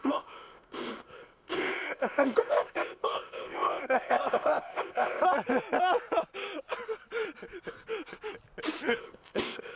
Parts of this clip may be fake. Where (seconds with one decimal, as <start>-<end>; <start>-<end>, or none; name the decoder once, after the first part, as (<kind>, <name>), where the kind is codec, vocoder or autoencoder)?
0.0-5.2 (codec, ZipCodec); 9.0-9.8